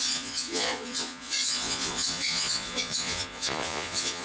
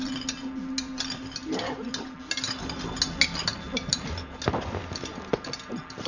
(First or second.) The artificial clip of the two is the first